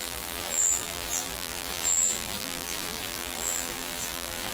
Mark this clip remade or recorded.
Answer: remade